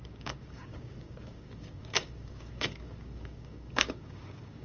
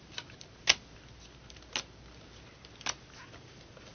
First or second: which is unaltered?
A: second